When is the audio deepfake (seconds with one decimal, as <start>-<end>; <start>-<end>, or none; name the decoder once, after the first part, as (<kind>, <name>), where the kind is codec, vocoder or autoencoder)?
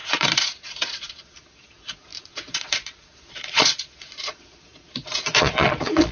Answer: 0.0-6.1 (vocoder, Vocos)